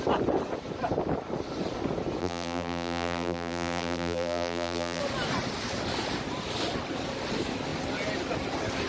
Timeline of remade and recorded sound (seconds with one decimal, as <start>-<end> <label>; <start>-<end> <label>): 0.0-2.2 recorded; 2.2-5.0 remade; 5.0-8.9 recorded